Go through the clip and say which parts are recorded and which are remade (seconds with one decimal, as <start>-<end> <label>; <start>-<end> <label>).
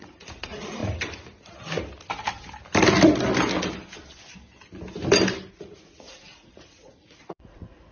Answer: 0.0-0.8 remade; 0.8-5.5 recorded; 5.5-7.9 remade